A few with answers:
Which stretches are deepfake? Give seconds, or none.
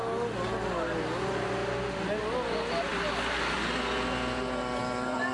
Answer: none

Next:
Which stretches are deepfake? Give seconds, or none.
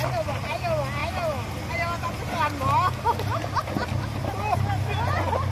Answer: none